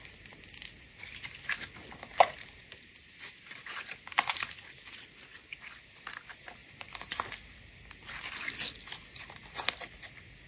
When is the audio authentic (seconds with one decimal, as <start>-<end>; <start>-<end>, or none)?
0.0-10.5